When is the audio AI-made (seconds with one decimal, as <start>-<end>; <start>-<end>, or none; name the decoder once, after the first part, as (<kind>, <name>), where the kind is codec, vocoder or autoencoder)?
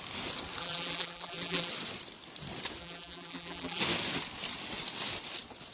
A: 0.6-1.7 (vocoder, BigVGAN v2); 2.8-3.8